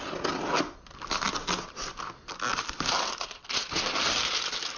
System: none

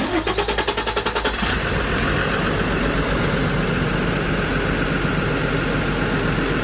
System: none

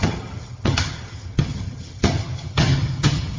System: vocoder, HiFi-GAN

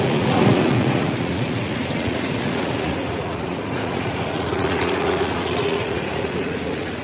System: vocoder, Vocos